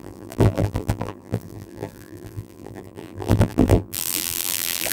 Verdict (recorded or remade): remade